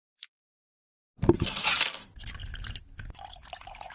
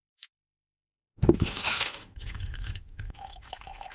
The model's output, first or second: second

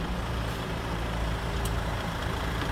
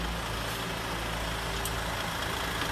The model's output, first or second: first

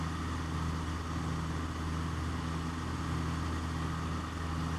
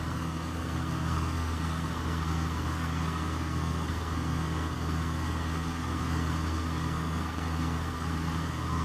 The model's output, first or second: second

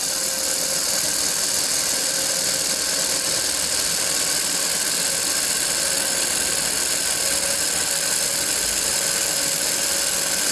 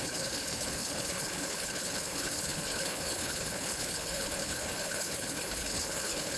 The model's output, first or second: second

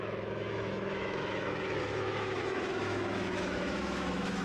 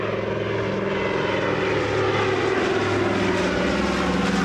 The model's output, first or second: first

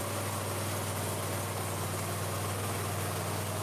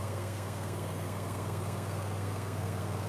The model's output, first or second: second